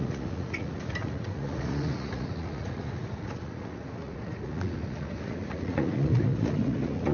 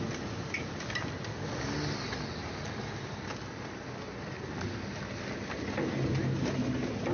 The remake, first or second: first